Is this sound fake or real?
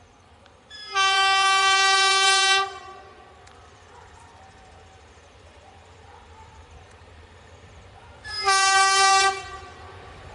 fake